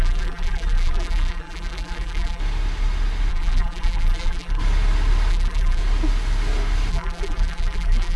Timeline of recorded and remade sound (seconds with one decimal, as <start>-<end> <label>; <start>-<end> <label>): 0.0-2.4 remade; 2.4-3.3 recorded; 3.3-4.6 remade; 4.6-5.3 recorded; 5.3-5.8 remade; 5.8-6.9 recorded; 6.9-8.2 remade